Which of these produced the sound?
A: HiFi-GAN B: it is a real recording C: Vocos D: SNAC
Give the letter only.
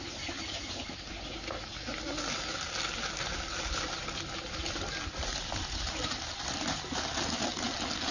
B